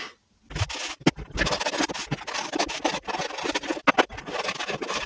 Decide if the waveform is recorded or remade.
recorded